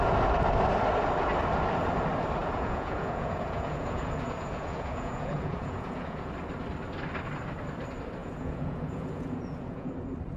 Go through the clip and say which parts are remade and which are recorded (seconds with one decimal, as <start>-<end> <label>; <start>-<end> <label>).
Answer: 0.0-2.4 recorded; 2.4-6.3 remade; 6.3-8.2 recorded; 8.2-9.9 remade; 9.9-10.4 recorded

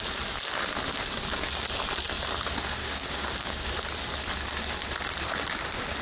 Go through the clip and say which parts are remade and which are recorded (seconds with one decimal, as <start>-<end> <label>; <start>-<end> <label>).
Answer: 0.0-2.8 recorded; 2.8-3.7 remade; 3.7-6.0 recorded

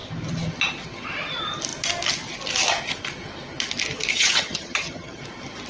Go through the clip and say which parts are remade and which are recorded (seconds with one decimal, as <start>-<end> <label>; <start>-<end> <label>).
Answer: 0.0-4.1 recorded; 4.1-5.2 remade; 5.2-5.7 recorded

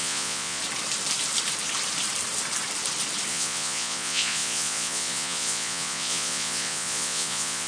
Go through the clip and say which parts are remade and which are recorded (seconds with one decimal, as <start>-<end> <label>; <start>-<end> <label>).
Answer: 0.0-0.6 remade; 0.6-3.3 recorded; 3.3-7.7 remade

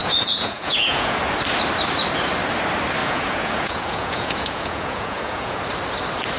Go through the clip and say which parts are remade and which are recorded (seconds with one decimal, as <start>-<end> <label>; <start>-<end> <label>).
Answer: 0.0-1.2 remade; 1.2-3.0 recorded; 3.0-5.6 remade; 5.6-6.4 recorded

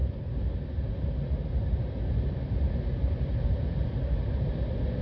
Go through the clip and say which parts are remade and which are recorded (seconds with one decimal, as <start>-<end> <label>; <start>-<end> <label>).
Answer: 0.0-5.0 recorded